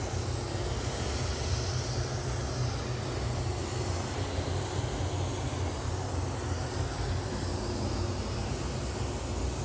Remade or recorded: recorded